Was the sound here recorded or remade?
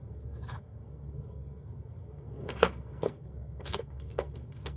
remade